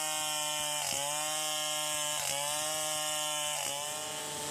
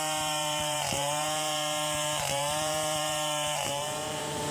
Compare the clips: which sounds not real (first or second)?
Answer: second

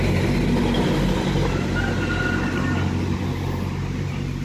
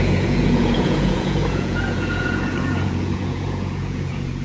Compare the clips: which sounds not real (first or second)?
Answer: second